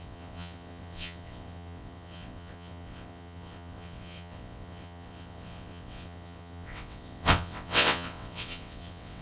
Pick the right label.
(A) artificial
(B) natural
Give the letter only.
A